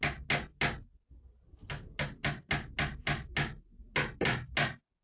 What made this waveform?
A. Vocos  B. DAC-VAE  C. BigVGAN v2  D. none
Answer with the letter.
D